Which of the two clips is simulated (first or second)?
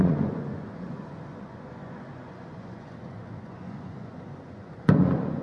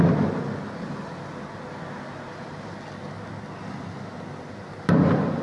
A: first